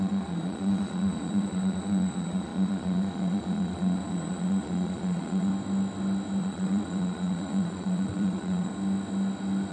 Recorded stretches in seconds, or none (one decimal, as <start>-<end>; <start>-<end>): 5.5-6.4; 8.7-9.7